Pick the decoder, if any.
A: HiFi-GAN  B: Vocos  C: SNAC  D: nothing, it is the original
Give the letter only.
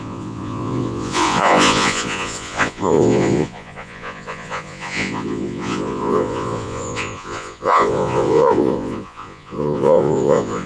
B